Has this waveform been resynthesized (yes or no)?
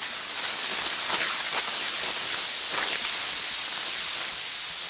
no